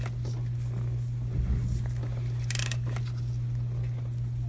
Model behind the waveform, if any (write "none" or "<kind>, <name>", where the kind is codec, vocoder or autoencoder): none